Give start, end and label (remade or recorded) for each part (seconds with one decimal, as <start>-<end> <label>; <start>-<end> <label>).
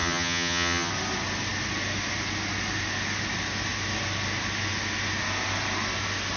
0.0-0.9 remade; 0.9-6.4 recorded